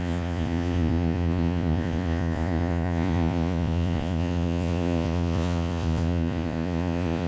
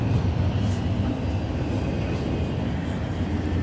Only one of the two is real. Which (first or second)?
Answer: second